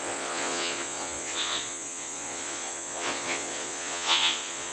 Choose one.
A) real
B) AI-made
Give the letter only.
B